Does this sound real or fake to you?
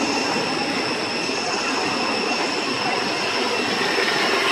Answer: real